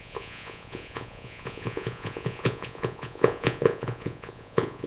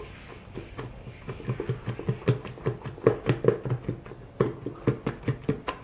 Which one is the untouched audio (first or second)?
second